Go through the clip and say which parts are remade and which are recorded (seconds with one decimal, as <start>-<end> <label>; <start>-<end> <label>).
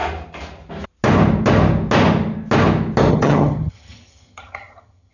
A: 0.0-3.1 recorded; 3.1-5.1 remade